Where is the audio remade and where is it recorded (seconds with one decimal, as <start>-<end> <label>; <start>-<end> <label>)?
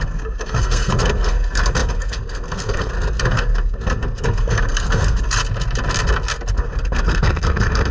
0.0-5.4 remade; 5.4-6.6 recorded; 6.6-7.9 remade